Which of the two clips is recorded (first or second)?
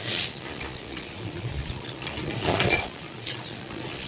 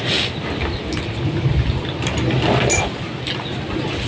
second